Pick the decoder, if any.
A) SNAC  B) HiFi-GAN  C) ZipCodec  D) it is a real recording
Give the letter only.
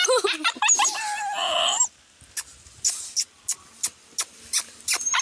D